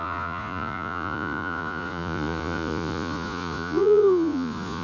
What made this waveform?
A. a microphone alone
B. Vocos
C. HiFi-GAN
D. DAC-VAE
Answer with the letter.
B